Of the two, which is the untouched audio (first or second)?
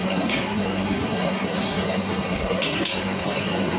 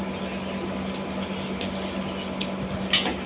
second